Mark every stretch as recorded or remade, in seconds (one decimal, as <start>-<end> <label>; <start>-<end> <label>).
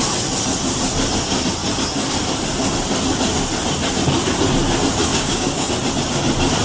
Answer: 0.0-5.1 recorded; 5.1-5.7 remade; 5.7-6.6 recorded